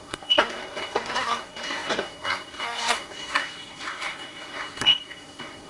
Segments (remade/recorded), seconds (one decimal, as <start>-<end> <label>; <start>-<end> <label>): 0.0-5.7 remade